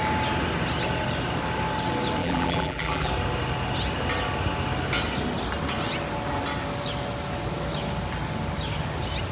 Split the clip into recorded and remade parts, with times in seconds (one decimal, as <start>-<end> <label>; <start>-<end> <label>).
0.0-2.2 recorded; 2.2-3.1 remade; 3.1-9.3 recorded